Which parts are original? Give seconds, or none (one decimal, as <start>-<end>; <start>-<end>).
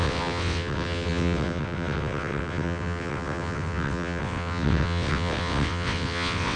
none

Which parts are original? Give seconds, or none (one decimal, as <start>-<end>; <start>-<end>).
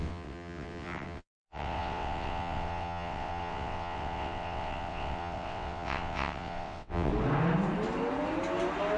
7.1-9.0